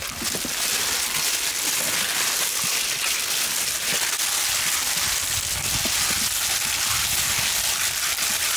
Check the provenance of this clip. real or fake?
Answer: real